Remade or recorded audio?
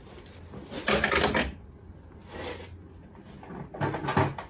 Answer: recorded